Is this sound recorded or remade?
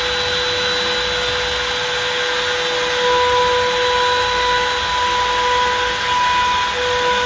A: recorded